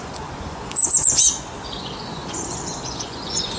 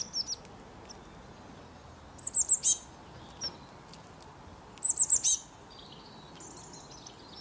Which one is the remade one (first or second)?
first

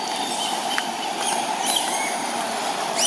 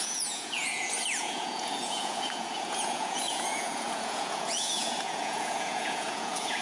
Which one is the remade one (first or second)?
second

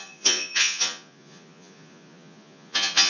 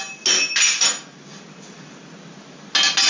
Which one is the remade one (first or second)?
first